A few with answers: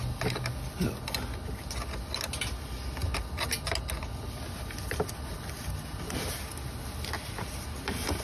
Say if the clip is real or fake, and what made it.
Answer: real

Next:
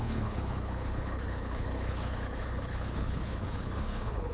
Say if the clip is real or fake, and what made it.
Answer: fake, codec, HILCodec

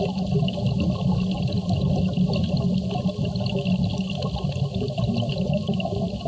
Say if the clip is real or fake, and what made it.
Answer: real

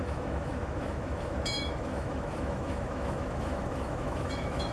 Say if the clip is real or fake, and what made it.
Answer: fake, autoencoder, DAC-VAE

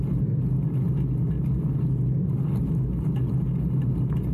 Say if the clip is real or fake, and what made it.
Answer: real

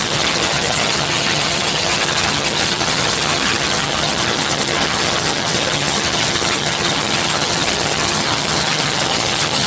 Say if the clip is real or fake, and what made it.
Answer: fake, vocoder, HiFi-GAN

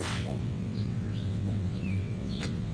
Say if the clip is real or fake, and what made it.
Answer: fake, vocoder, WaveNeXt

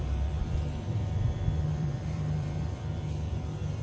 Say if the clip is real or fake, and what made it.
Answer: fake, vocoder, BigVGAN v2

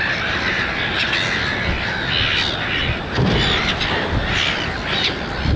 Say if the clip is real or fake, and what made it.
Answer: real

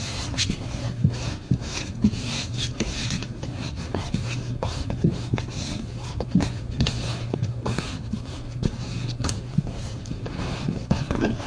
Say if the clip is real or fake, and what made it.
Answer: fake, codec, SNAC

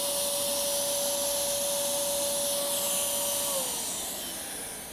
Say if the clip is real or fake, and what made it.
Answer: real